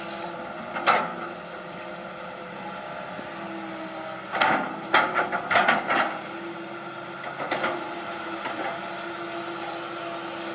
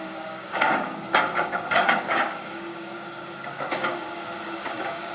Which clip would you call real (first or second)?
first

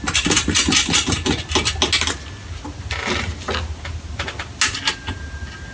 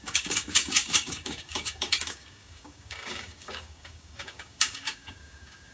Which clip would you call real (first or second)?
first